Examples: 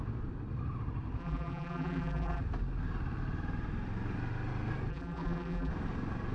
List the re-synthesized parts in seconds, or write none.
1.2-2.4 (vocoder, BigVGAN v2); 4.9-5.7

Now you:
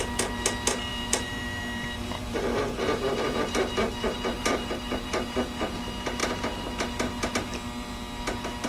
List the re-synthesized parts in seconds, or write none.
0.9-5.8 (vocoder, BigVGAN v2)

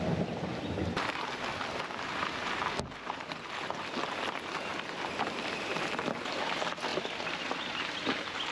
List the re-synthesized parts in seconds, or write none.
1.5-4.1 (vocoder, BigVGAN v2); 4.7-5.8; 6.9-7.8

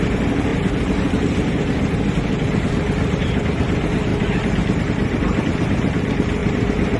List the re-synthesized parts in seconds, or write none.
0.5-1.6 (vocoder, BigVGAN v2); 4.1-4.8; 6.4-7.0